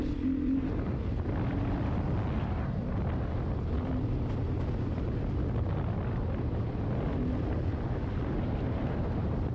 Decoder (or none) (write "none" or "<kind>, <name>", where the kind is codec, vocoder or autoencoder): none